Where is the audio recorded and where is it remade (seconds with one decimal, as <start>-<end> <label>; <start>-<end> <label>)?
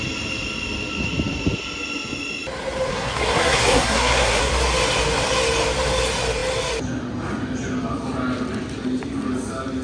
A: 0.0-2.9 recorded; 2.9-4.5 remade; 4.5-9.8 recorded